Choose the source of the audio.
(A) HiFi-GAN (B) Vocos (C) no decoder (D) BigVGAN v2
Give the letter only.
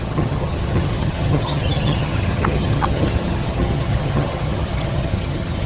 A